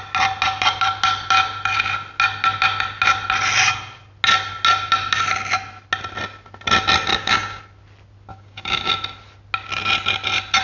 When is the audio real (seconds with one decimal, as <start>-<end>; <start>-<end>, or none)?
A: 0.0-7.1; 7.6-8.3; 8.9-10.6